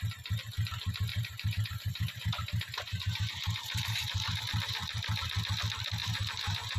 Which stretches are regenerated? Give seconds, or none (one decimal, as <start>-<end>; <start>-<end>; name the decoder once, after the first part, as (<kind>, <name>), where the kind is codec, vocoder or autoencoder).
1.1-4.4 (vocoder, BigVGAN v2); 6.0-6.8